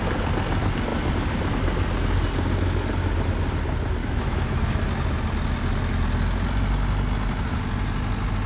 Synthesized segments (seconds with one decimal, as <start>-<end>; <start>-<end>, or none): 4.0-4.7